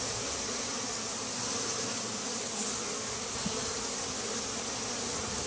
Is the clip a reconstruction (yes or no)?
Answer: no